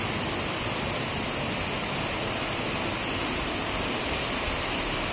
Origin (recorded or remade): recorded